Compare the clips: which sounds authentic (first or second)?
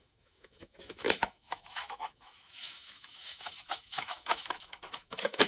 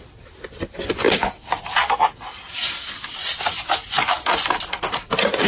second